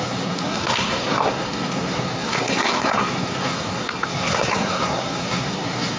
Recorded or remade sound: remade